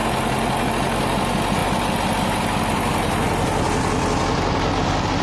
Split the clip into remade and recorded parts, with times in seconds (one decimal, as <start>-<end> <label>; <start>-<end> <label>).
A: 0.0-5.2 recorded